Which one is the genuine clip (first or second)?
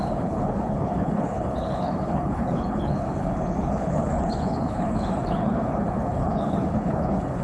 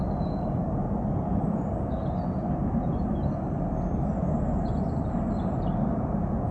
second